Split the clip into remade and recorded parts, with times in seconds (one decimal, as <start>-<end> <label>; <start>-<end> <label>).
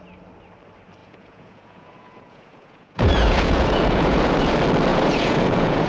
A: 0.0-1.0 recorded; 1.0-4.5 remade; 4.5-4.9 recorded; 4.9-5.9 remade